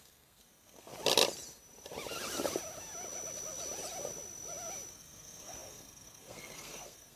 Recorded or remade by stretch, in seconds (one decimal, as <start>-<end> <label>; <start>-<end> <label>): 0.0-0.9 remade; 0.9-4.9 recorded; 4.9-7.2 remade